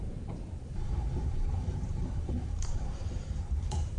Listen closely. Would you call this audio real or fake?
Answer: fake